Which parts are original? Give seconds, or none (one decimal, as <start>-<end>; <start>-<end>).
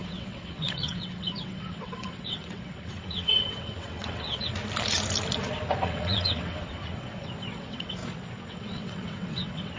4.5-5.8; 8.0-8.5